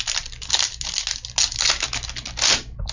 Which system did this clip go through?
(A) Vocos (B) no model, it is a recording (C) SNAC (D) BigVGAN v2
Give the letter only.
B